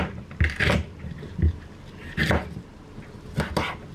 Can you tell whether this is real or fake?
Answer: real